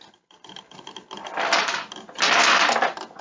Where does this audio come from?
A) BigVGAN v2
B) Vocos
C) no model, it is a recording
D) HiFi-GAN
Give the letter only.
C